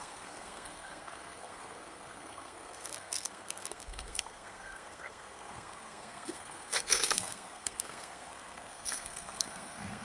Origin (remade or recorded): remade